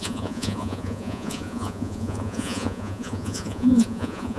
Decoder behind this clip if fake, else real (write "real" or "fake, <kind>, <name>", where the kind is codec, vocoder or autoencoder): fake, vocoder, Vocos